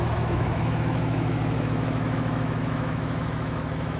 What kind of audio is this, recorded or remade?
remade